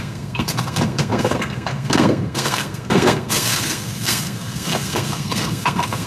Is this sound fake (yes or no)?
yes